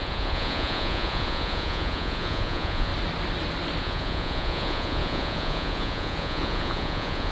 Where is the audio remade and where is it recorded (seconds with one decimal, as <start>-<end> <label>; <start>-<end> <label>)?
0.0-2.9 remade; 2.9-3.8 recorded; 3.8-7.3 remade

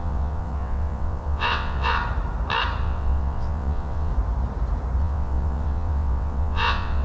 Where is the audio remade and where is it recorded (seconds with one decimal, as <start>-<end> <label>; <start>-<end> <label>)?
0.0-2.0 remade; 2.0-2.8 recorded; 2.8-4.1 remade; 4.1-5.0 recorded; 5.0-7.0 remade